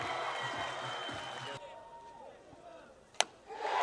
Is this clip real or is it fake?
real